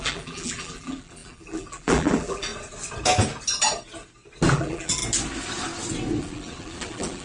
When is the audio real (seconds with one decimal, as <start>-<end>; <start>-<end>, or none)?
2.5-4.5; 5.0-6.2